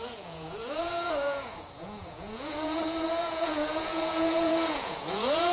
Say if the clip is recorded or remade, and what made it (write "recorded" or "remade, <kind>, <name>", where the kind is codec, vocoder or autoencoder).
remade, vocoder, Vocos